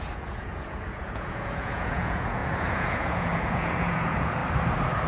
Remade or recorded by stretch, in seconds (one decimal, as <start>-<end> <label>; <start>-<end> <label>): 0.0-4.4 remade; 4.4-5.1 recorded